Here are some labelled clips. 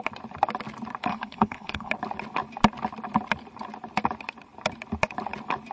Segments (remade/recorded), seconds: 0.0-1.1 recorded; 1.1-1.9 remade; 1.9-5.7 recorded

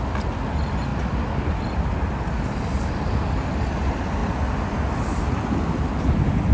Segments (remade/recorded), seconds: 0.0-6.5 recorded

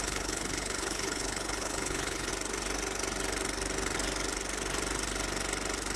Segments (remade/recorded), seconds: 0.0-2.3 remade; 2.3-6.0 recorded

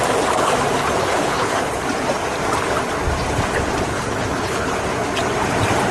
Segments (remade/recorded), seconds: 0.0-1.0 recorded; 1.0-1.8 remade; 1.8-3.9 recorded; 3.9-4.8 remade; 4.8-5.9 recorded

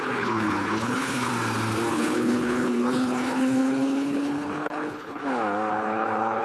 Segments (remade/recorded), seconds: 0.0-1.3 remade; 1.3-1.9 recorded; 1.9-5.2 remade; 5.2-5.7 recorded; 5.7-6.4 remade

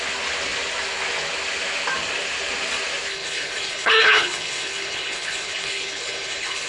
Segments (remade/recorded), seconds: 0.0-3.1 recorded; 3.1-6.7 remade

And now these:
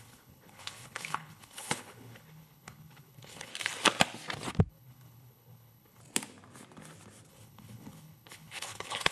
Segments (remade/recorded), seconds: 0.0-3.5 remade; 3.5-4.7 recorded; 4.7-6.0 remade; 6.0-7.3 recorded; 7.3-9.1 remade